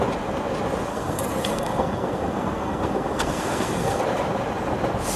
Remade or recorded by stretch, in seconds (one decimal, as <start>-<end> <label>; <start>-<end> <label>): 0.0-0.9 recorded; 0.9-4.0 remade; 4.0-5.2 recorded